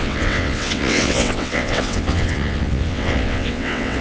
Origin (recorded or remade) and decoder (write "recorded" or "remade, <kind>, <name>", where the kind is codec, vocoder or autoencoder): remade, vocoder, WaveNeXt